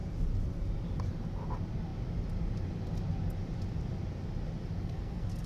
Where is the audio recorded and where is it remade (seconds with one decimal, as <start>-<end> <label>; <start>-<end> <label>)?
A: 0.0-4.8 recorded; 4.8-5.5 remade